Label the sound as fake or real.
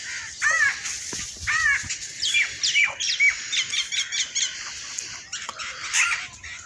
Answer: real